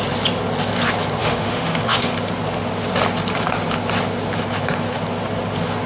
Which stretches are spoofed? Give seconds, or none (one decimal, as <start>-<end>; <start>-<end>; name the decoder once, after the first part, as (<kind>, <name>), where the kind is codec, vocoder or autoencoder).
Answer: 1.2-2.1 (autoencoder, DAC-VAE)